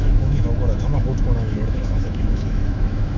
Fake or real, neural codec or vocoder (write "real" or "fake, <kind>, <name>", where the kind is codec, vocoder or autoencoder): fake, autoencoder, DAC-VAE